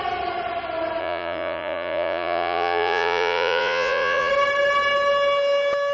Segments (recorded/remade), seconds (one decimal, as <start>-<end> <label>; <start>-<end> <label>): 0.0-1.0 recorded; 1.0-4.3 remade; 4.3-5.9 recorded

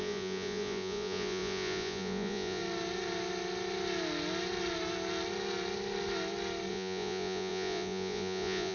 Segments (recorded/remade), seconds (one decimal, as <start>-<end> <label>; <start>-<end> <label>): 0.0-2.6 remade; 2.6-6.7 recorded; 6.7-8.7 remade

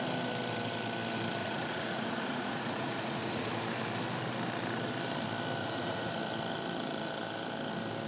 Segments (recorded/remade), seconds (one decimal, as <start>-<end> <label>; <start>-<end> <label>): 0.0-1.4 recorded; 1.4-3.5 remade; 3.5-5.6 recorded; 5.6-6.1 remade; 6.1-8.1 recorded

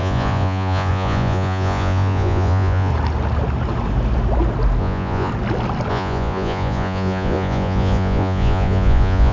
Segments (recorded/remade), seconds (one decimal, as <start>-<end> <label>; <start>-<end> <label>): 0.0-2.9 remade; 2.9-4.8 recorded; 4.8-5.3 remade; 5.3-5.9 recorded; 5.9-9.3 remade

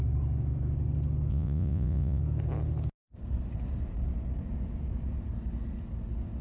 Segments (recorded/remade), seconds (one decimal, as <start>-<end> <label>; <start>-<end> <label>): 0.0-1.3 recorded; 1.3-2.2 remade; 2.2-6.4 recorded